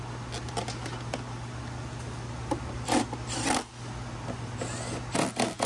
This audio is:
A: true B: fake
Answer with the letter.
A